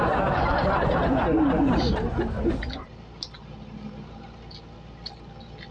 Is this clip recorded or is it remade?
recorded